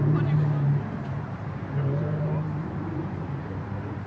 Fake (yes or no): yes